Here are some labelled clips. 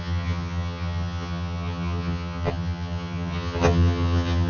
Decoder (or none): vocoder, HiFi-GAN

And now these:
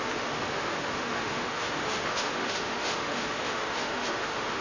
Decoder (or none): autoencoder, DAC-VAE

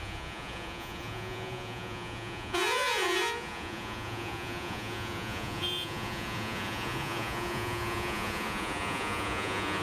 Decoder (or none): vocoder, Vocos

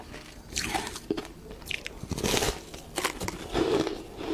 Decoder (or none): none